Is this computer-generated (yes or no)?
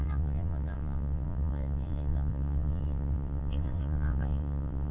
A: yes